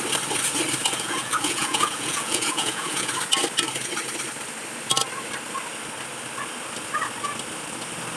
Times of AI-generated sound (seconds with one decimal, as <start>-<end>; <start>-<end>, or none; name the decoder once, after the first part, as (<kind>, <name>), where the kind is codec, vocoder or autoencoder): 0.8-3.1 (vocoder, Vocos)